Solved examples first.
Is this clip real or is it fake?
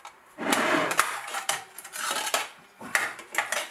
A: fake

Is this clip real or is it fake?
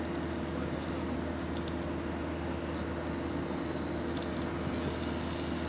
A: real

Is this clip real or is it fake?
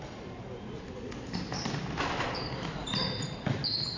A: real